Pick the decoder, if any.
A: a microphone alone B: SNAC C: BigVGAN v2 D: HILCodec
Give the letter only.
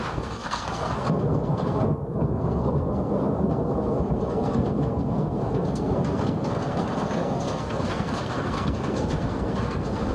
B